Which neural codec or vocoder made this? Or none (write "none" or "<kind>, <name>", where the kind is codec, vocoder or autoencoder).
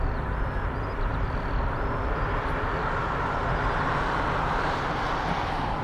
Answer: none